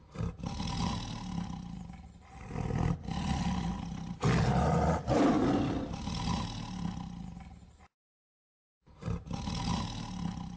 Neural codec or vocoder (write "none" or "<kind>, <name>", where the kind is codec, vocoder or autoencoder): none